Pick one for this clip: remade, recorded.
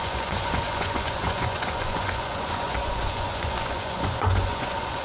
remade